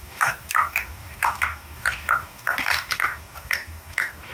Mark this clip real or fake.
fake